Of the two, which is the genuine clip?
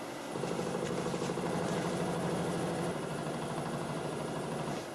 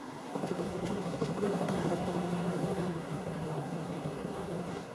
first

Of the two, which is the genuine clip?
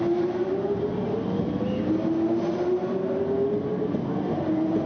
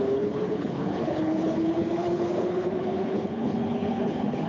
first